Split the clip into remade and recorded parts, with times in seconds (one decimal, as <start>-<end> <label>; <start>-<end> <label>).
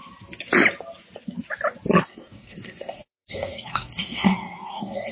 0.0-2.0 recorded; 2.0-5.1 remade